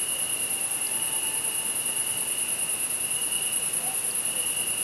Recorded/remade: recorded